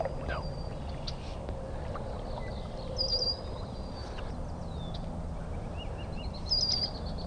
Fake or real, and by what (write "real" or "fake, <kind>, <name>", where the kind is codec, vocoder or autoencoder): real